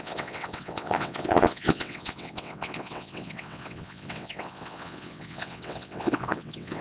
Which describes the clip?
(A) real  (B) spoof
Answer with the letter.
B